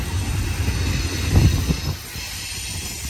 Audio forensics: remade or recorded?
recorded